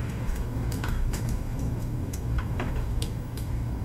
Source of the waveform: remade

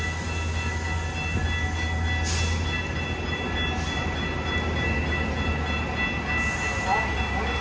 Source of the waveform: recorded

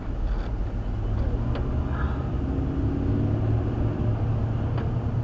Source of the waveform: recorded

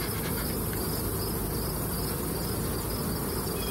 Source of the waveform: recorded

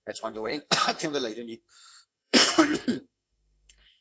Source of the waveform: remade